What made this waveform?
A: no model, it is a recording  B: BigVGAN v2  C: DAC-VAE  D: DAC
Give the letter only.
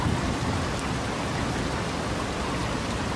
A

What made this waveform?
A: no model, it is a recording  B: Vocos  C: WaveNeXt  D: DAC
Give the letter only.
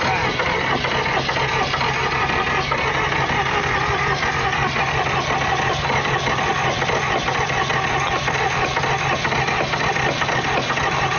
A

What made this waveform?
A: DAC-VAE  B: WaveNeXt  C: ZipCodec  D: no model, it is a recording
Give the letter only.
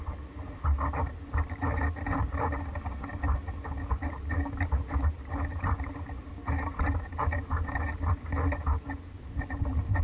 D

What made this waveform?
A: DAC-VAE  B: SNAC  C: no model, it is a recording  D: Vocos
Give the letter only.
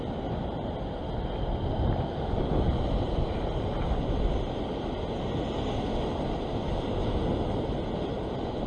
C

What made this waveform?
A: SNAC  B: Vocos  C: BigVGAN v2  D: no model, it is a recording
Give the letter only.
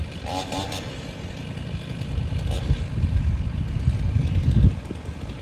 D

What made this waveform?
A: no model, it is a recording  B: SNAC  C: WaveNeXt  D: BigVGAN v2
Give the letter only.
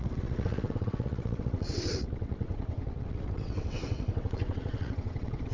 C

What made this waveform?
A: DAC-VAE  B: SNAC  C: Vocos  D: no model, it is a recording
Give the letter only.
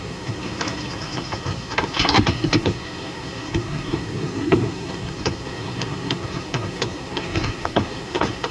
B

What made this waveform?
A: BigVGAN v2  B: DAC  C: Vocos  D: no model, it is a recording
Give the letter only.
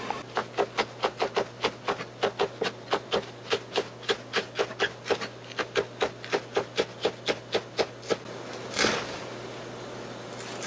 D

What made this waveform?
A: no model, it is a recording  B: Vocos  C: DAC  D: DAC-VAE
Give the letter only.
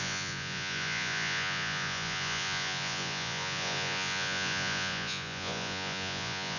B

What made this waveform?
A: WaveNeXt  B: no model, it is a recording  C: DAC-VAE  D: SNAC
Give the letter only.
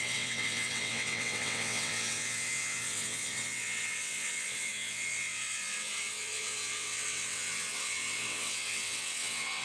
A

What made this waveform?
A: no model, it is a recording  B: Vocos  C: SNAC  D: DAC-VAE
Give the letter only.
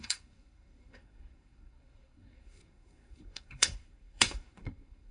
C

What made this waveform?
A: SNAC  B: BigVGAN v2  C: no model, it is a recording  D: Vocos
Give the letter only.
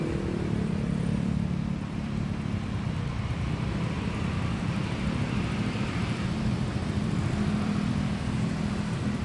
B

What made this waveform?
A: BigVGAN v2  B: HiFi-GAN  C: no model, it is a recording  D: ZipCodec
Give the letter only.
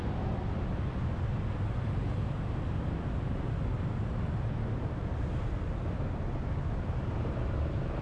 C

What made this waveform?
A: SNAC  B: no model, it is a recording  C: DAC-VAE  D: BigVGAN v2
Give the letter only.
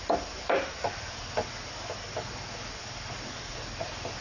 B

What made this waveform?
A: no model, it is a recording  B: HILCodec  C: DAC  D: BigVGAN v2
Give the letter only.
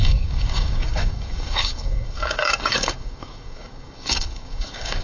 C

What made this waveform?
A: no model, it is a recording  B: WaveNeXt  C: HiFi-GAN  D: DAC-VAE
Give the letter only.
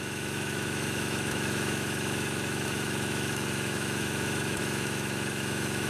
D